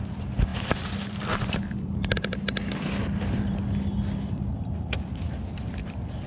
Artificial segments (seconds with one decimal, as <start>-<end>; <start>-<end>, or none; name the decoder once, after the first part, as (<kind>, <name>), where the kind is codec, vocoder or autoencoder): 0.5-3.4 (vocoder, BigVGAN v2)